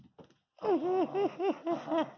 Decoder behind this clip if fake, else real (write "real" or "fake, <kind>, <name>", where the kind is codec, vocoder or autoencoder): real